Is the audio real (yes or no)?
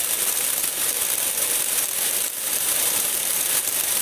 no